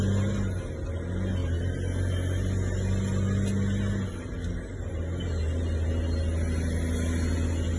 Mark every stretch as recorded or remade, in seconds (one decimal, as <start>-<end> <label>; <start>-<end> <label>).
0.0-7.8 recorded